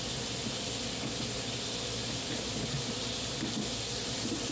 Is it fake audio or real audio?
real